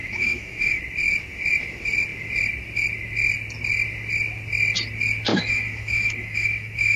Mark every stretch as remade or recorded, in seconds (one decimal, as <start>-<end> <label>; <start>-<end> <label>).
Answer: 0.0-0.8 remade; 0.8-5.3 recorded; 5.3-7.0 remade